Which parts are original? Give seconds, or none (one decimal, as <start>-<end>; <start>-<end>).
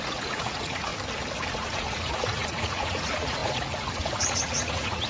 0.9-1.5